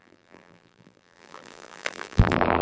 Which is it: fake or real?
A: fake